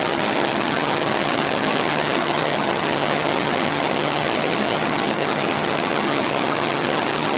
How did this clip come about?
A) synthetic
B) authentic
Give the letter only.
A